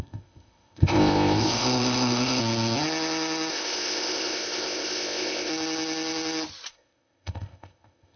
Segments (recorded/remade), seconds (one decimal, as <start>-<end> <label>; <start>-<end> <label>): 0.0-2.4 remade; 2.4-3.5 recorded; 3.5-5.5 remade; 5.5-6.7 recorded; 6.7-8.2 remade